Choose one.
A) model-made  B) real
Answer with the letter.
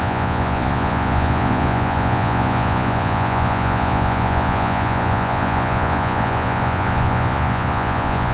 A